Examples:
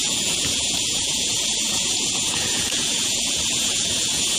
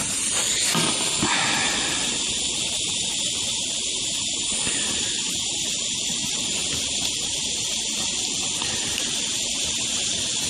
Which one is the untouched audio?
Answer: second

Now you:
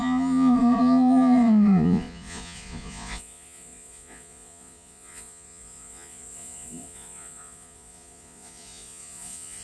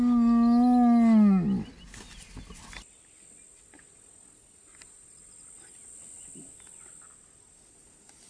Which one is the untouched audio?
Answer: second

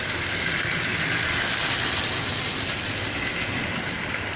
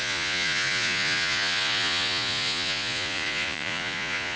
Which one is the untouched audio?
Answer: first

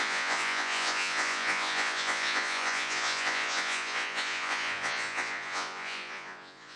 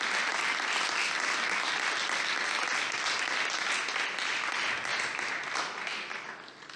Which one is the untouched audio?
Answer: second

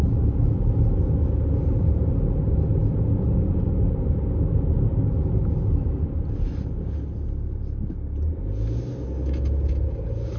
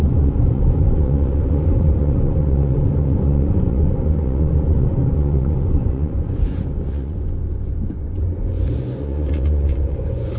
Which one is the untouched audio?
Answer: first